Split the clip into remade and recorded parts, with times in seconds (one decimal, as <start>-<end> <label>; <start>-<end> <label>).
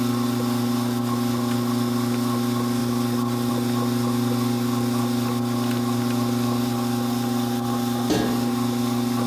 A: 0.0-9.3 recorded